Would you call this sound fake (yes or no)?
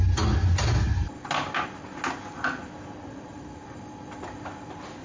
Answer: no